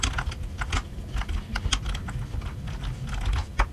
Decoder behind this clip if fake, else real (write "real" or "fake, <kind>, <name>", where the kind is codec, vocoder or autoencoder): real